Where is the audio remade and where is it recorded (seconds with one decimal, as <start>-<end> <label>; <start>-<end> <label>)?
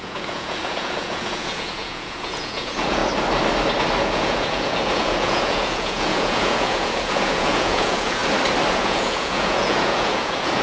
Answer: 0.0-3.0 remade; 3.0-4.0 recorded; 4.0-8.2 remade; 8.2-8.7 recorded; 8.7-10.6 remade